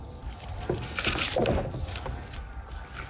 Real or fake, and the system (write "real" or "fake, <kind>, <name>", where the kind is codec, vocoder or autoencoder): real